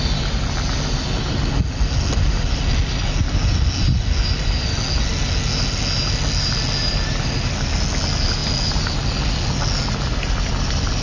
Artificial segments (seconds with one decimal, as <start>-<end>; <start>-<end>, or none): none